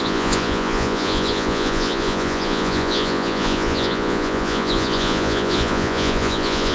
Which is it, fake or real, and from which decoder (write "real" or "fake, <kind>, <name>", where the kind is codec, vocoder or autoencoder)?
fake, vocoder, Vocos